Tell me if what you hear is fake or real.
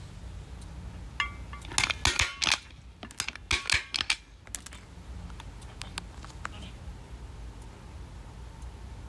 real